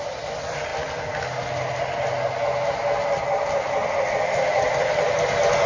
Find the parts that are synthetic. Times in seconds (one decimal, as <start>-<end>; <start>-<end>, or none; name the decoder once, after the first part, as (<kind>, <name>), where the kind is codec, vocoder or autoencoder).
none